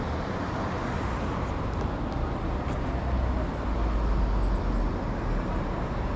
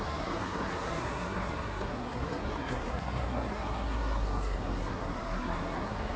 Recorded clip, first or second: first